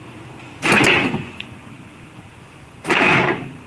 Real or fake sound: fake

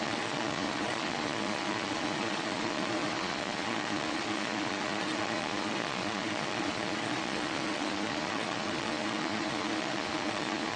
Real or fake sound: fake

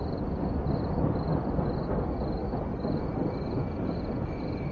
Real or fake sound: real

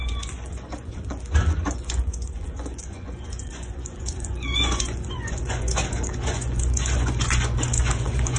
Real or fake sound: fake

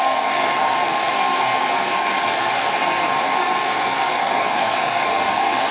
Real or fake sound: fake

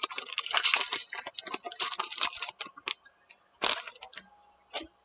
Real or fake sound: real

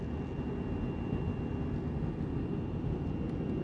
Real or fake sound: real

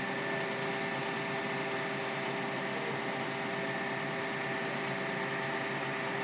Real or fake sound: real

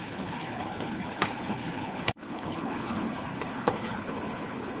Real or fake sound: fake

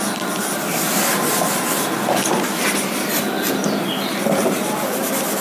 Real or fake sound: real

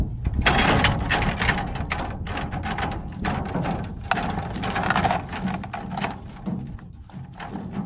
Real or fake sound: real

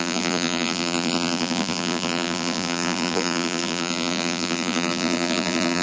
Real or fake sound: fake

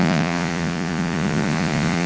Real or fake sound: fake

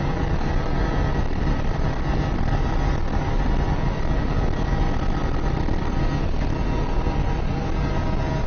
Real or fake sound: real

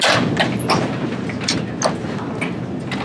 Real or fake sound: real